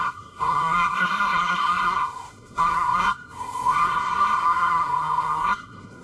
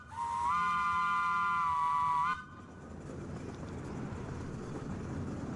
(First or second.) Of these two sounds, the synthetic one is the first